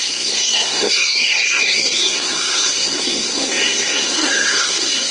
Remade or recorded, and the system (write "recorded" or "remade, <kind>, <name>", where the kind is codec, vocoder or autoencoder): remade, codec, SNAC